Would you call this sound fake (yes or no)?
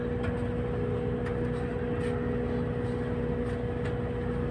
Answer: no